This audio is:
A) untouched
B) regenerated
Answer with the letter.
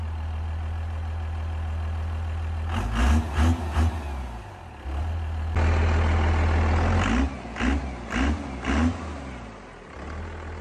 A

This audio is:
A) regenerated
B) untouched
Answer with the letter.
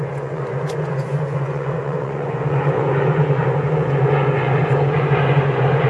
A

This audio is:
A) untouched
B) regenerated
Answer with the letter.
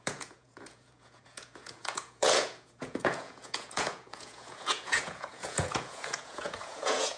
B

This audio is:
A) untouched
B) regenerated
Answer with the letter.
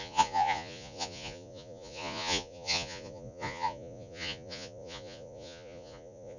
B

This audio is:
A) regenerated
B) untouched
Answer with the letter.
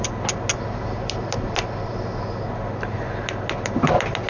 B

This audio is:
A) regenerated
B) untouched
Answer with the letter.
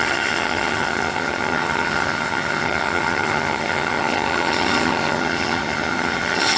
A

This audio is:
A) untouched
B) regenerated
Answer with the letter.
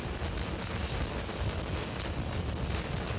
A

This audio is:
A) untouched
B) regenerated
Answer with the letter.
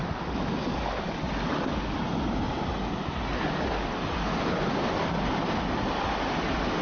A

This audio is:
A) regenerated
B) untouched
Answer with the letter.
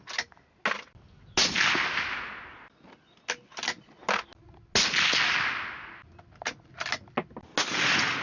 B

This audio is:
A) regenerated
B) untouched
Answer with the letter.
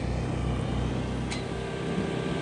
B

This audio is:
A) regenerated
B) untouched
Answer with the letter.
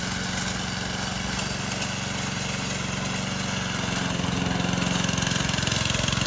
B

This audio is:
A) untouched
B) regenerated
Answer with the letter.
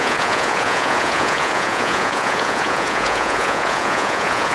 B